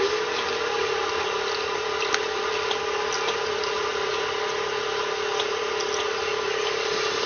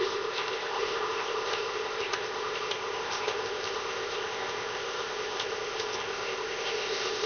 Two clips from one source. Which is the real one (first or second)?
first